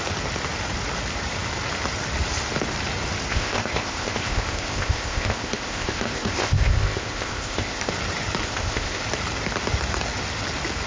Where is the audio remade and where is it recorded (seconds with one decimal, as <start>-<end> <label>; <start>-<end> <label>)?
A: 0.0-3.3 recorded; 3.3-7.9 remade; 7.9-8.4 recorded; 8.4-9.0 remade; 9.0-10.9 recorded